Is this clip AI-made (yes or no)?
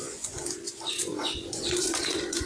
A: yes